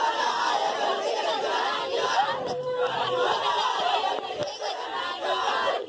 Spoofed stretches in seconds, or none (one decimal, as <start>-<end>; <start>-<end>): 0.0-0.9; 2.6-4.4